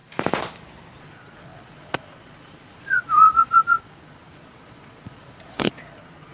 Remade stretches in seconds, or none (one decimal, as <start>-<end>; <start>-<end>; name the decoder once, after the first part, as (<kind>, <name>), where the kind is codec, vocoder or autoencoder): 1.0-6.3 (vocoder, Vocos)